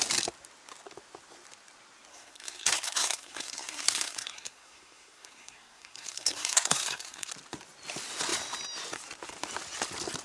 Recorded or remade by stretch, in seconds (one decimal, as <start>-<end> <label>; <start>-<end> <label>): 0.0-2.1 recorded; 2.1-7.3 remade; 7.3-10.2 recorded

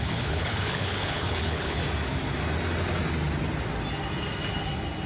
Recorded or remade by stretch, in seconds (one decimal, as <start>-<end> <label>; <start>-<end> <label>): 0.0-1.8 remade; 1.8-5.1 recorded